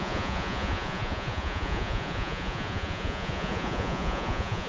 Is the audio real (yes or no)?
no